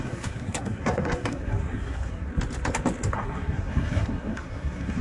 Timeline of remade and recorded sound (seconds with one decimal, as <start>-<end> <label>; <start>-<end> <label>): 0.0-2.3 remade; 2.3-3.1 recorded; 3.1-5.0 remade